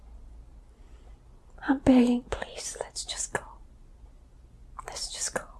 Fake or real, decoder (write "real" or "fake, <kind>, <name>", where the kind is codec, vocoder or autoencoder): real